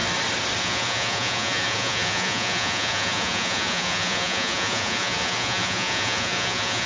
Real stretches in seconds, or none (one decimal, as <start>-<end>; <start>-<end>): 0.0-0.6